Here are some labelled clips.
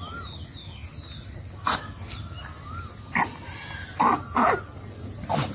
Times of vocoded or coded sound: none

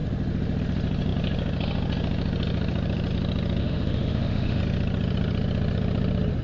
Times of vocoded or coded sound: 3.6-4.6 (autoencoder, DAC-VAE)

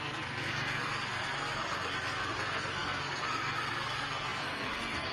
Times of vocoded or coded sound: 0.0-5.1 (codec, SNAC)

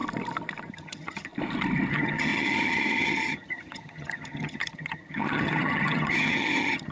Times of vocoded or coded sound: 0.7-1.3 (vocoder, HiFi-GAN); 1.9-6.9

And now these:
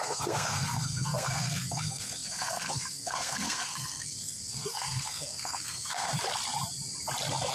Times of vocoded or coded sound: 0.0-6.1 (codec, SNAC)

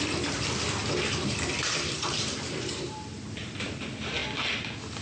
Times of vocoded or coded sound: 0.8-3.8 (vocoder, BigVGAN v2)